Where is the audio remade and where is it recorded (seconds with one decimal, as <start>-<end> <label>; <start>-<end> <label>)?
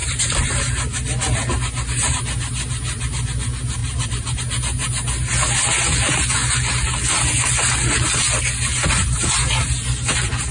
0.0-0.6 remade; 0.6-3.8 recorded; 3.8-4.4 remade; 4.4-10.5 recorded